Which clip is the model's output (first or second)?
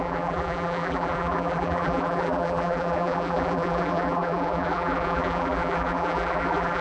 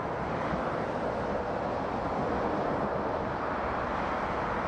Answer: first